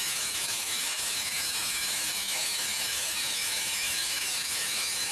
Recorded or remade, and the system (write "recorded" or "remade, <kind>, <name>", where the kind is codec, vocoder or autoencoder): remade, autoencoder, DAC-VAE